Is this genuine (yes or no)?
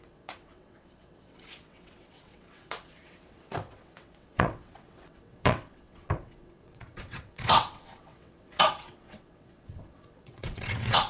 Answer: no